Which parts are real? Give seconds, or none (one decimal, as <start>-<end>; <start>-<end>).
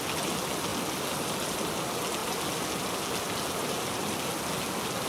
0.0-5.1